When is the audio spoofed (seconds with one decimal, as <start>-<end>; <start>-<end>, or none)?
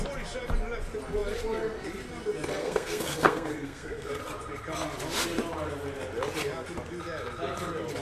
2.6-4.1